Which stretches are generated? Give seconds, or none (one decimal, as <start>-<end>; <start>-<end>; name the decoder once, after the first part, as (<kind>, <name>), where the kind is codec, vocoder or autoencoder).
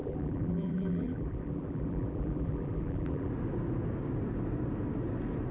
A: 0.0-3.3 (vocoder, BigVGAN v2)